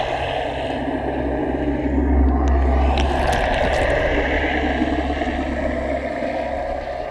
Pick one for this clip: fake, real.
real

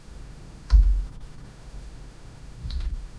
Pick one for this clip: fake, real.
fake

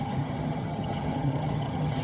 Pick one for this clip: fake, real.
fake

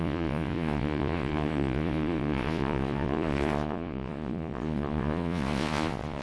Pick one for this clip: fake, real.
fake